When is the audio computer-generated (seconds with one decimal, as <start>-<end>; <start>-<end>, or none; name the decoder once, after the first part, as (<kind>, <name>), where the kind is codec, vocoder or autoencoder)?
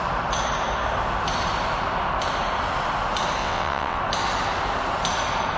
3.4-4.0 (vocoder, WaveNeXt)